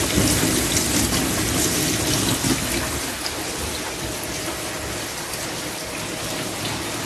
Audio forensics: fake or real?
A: real